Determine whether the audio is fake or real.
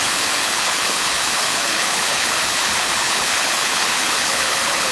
fake